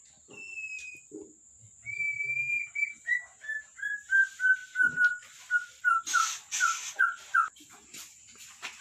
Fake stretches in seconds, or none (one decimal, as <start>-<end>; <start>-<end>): none